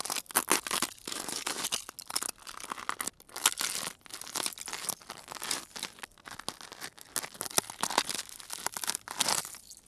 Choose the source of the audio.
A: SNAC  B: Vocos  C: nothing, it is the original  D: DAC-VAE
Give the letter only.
C